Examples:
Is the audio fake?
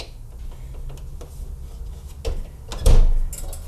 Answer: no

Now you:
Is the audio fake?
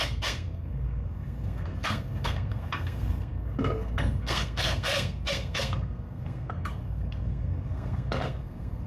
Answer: yes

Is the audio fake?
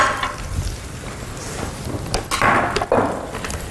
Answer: no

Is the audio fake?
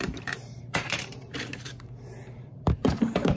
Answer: yes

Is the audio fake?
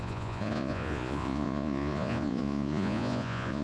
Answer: yes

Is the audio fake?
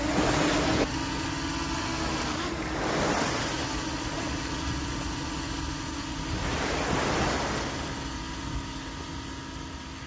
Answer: no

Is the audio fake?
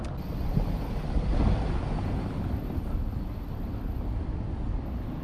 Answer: no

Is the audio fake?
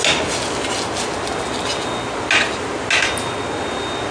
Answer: no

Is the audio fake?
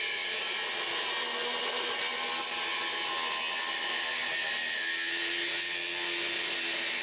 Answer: no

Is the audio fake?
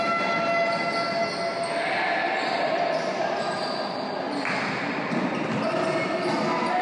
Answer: no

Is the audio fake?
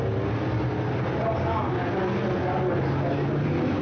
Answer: no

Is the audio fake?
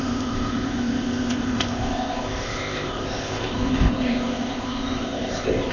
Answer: yes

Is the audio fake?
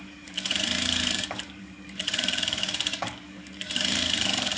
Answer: yes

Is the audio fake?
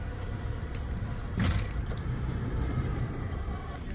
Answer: yes